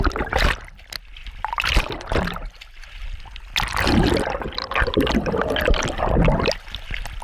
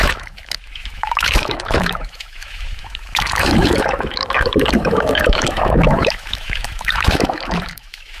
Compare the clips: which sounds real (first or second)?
first